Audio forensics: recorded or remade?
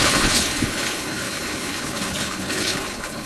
remade